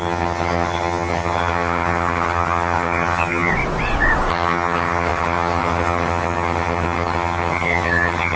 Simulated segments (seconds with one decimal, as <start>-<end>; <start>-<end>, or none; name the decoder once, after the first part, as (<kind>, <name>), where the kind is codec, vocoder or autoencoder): 0.0-3.5 (vocoder, HiFi-GAN); 4.3-8.4